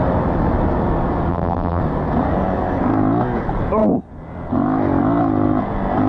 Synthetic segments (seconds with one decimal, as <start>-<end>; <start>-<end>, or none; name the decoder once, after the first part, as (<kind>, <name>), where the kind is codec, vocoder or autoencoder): 1.3-1.8 (vocoder, BigVGAN v2)